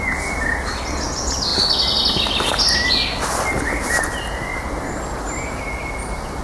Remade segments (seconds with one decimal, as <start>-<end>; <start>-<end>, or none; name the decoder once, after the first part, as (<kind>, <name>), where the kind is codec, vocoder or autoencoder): none